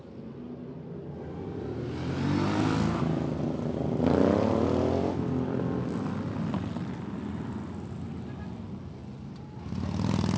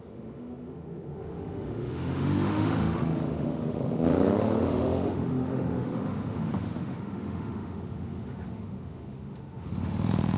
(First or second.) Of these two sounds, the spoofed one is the second